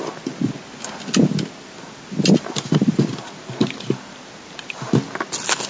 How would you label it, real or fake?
real